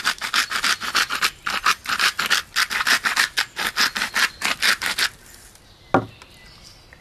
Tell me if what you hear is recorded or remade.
recorded